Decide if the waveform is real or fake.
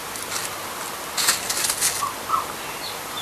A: real